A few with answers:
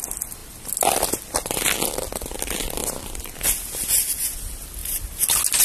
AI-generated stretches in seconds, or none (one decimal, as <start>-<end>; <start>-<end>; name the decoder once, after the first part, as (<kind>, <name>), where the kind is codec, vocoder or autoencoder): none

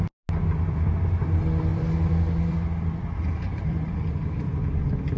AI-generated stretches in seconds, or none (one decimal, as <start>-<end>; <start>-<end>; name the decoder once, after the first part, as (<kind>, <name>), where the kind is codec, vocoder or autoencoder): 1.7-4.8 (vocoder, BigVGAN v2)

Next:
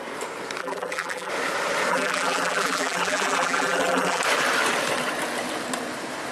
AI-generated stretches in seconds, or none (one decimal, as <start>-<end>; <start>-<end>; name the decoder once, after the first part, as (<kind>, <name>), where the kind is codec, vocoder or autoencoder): 0.6-1.3 (vocoder, BigVGAN v2); 1.9-4.2